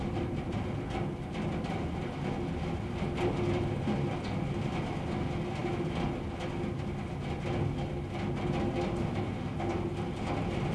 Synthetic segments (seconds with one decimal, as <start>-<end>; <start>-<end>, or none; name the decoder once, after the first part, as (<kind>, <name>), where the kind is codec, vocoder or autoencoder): none